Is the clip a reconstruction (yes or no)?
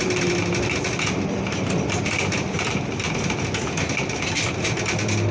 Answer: no